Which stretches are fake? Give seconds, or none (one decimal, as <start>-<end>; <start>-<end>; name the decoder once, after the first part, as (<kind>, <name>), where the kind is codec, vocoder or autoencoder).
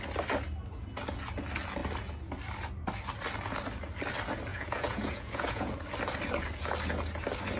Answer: 4.5-5.7 (vocoder, Vocos)